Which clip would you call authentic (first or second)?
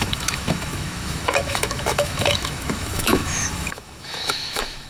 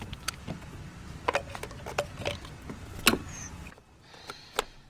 second